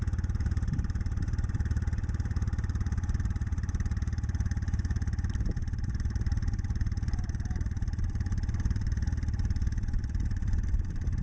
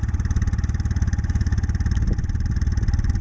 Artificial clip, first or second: first